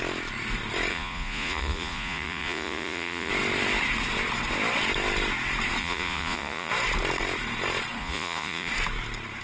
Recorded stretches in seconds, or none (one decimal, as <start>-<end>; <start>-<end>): 0.0-0.9; 3.3-5.8; 6.7-8.0; 8.7-9.4